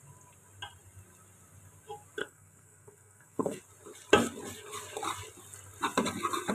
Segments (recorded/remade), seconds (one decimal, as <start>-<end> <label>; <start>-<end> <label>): 0.0-2.2 recorded; 2.2-3.6 remade; 3.6-6.5 recorded